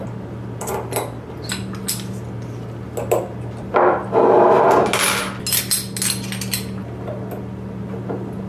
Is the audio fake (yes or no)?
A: no